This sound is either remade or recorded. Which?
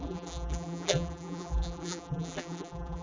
remade